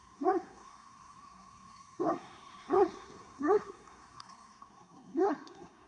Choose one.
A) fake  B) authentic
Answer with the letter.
A